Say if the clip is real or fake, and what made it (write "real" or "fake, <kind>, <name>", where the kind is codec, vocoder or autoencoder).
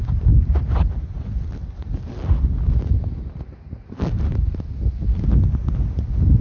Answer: real